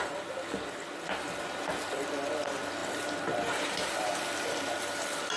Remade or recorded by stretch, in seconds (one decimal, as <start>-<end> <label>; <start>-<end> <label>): 0.0-5.4 recorded